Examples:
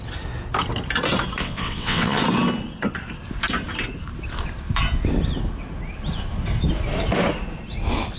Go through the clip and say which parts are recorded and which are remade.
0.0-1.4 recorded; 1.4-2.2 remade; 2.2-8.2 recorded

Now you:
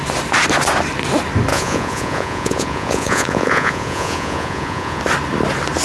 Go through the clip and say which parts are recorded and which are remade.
0.0-1.5 recorded; 1.5-5.0 remade; 5.0-5.8 recorded

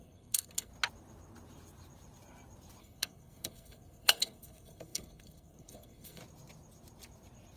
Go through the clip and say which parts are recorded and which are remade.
0.0-0.7 remade; 0.7-2.8 recorded; 2.8-6.2 remade; 6.2-7.6 recorded

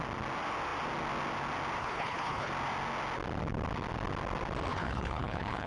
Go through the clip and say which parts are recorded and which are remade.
0.0-1.8 recorded; 1.8-2.5 remade; 2.5-4.7 recorded; 4.7-5.7 remade

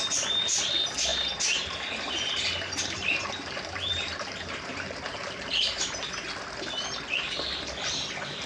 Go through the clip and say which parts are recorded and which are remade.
0.0-1.1 recorded; 1.1-6.1 remade; 6.1-7.8 recorded; 7.8-8.5 remade

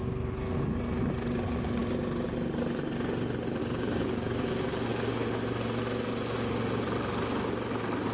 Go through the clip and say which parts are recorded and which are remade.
0.0-3.6 recorded; 3.6-4.5 remade; 4.5-8.1 recorded

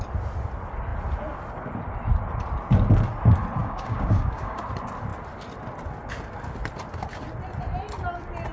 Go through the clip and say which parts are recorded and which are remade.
0.0-3.6 recorded; 3.6-4.6 remade; 4.6-8.5 recorded